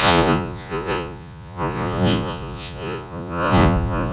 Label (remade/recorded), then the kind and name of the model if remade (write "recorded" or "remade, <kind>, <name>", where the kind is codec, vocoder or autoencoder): remade, vocoder, Vocos